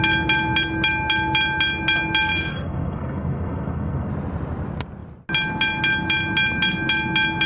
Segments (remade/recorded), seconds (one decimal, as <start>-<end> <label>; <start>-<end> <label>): 0.0-2.5 recorded; 2.5-4.1 remade; 4.1-7.5 recorded